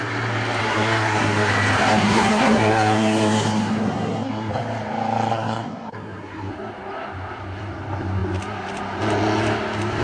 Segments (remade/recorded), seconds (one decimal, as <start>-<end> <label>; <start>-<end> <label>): 0.0-0.6 recorded; 0.6-1.5 remade; 1.5-1.9 recorded; 1.9-4.5 remade; 4.5-5.3 recorded; 5.3-6.5 remade; 6.5-10.0 recorded